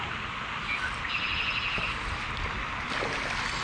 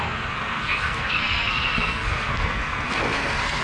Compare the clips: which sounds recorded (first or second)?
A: first